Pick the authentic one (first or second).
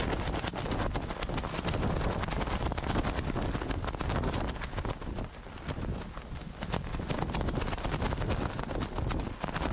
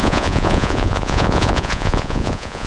first